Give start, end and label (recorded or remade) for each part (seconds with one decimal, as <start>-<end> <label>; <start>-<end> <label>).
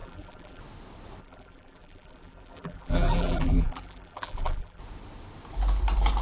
0.0-0.6 remade; 0.6-1.2 recorded; 1.2-4.8 remade; 4.8-6.2 recorded